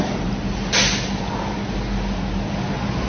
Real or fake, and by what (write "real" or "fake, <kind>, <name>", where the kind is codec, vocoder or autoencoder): real